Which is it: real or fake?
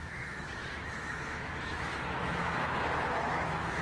fake